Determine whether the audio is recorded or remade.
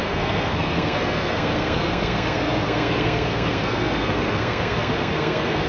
remade